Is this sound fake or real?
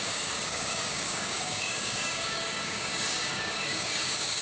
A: fake